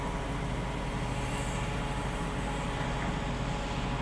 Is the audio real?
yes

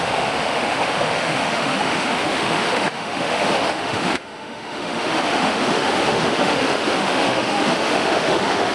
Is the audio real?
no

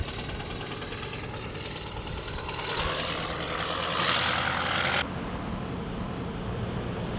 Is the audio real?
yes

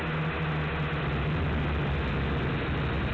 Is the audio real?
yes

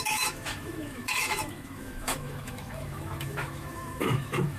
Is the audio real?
no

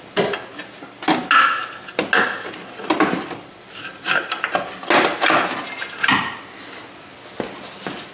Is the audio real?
yes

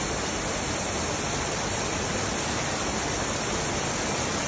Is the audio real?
yes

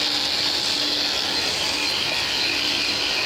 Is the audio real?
yes